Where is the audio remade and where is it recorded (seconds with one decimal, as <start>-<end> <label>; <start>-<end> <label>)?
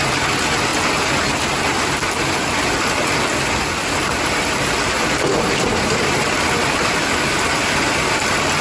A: 0.0-0.7 remade; 0.7-4.1 recorded; 4.1-7.0 remade; 7.0-7.6 recorded; 7.6-8.6 remade